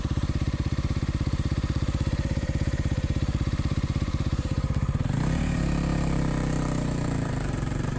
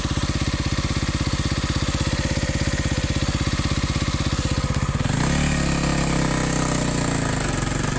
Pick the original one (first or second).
second